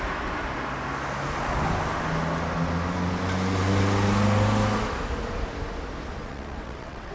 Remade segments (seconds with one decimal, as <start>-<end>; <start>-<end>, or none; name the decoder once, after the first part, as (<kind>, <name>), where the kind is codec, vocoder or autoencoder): 6.2-7.1 (vocoder, WaveNeXt)